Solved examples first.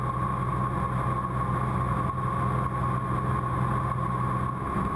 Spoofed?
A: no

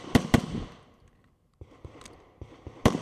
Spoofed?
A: no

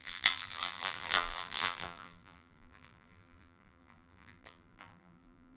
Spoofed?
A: yes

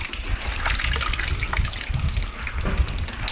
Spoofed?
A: no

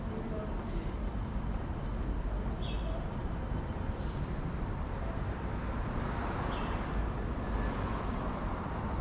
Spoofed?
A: no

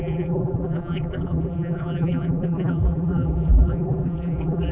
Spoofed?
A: yes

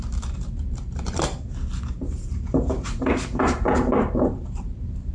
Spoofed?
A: yes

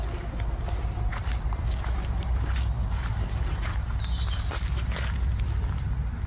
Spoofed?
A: no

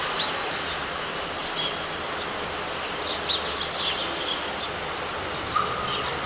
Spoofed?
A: no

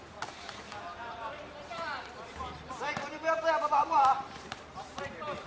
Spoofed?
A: yes